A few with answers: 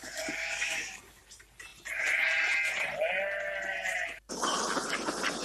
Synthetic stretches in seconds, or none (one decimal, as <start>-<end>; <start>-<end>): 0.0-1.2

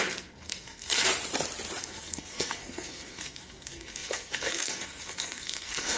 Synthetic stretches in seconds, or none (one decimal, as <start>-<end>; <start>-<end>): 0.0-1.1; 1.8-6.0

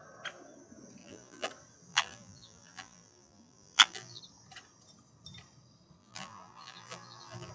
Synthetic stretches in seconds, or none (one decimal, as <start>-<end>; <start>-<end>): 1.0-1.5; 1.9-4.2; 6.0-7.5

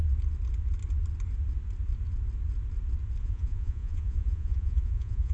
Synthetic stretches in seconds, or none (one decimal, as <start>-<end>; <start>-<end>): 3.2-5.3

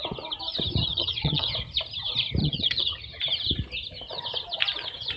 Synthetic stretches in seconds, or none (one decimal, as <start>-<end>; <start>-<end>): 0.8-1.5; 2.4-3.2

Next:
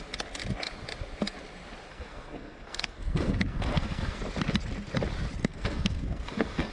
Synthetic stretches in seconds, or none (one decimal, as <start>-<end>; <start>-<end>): 1.9-4.2; 5.4-6.7

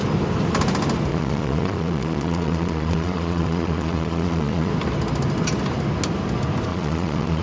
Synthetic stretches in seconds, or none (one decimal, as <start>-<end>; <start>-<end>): 1.1-4.7; 6.7-7.4

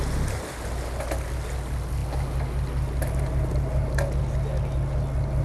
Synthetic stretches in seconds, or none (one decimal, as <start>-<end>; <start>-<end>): none